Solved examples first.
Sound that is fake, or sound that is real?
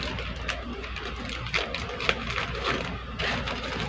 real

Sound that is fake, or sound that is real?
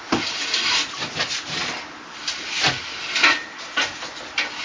real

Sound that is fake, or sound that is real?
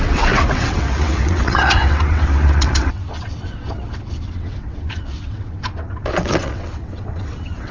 fake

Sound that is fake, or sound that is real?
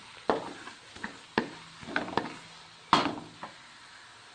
real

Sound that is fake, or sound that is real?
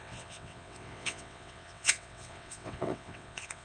fake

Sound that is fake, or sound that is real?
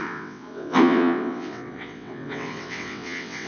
fake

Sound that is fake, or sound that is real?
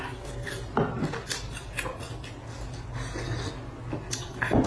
real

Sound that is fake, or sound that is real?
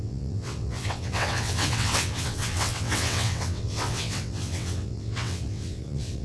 fake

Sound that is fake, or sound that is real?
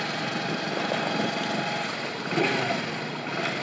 real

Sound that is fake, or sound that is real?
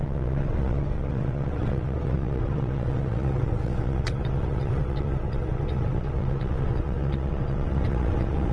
fake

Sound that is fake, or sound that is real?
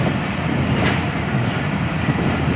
real